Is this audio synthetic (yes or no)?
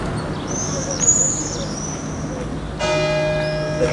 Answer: no